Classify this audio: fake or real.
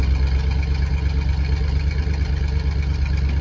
real